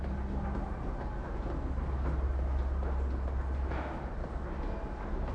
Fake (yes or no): no